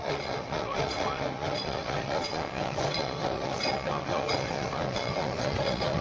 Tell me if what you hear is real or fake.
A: fake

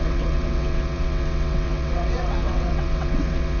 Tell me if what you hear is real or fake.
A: fake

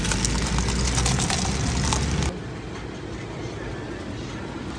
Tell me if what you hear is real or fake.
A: real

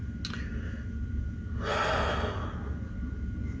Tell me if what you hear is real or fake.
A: real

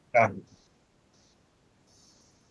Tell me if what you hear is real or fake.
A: real